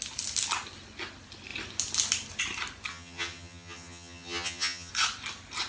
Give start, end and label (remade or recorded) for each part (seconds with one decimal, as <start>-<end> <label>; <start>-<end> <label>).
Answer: 0.0-2.9 recorded; 2.9-4.9 remade; 4.9-5.7 recorded